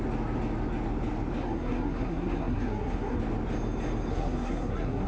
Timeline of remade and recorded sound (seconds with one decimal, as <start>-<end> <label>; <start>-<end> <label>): 0.0-1.4 recorded; 1.4-3.2 remade; 3.2-4.1 recorded; 4.1-5.1 remade